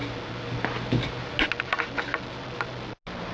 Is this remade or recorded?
recorded